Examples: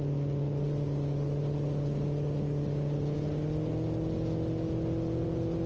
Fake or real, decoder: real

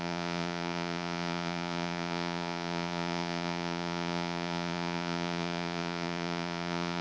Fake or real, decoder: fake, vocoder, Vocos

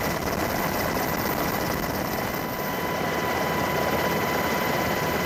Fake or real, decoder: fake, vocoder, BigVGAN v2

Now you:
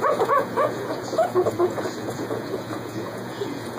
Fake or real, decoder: fake, vocoder, Vocos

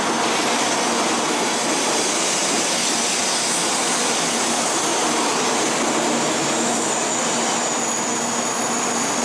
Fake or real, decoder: real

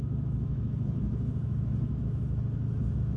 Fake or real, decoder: fake, autoencoder, DAC-VAE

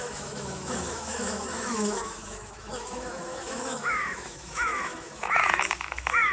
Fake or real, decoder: fake, autoencoder, DAC-VAE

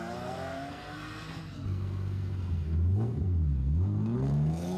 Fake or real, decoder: fake, codec, SNAC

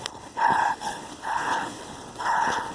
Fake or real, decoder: fake, codec, HILCodec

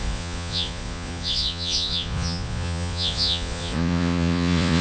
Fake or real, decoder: fake, vocoder, Vocos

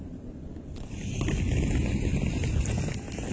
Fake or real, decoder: real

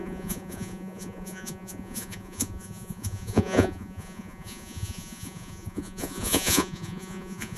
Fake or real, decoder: fake, vocoder, Vocos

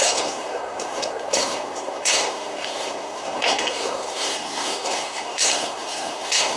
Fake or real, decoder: fake, codec, SNAC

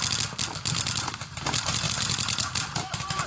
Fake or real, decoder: real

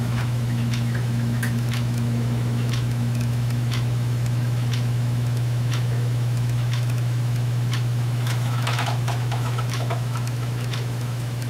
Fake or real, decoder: fake, autoencoder, DAC-VAE